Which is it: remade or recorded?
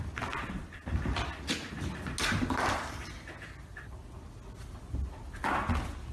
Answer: recorded